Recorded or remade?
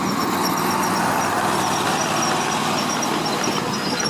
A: recorded